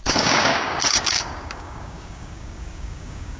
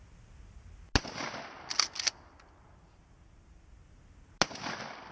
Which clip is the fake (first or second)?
first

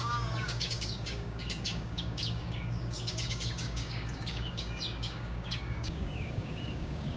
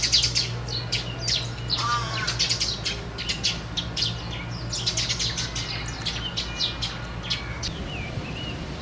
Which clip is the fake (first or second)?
first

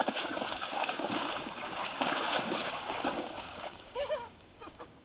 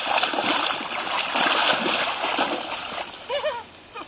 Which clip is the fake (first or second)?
first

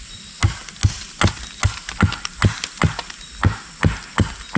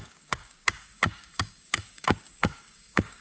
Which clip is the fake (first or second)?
second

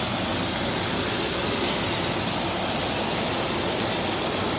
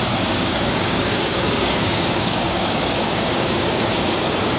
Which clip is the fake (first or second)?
second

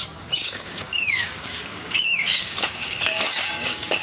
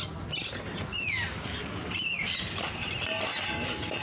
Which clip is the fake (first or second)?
first